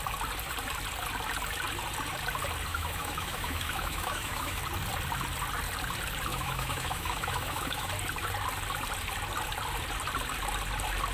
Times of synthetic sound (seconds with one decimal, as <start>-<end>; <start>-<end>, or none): 2.7-4.6; 6.3-7.9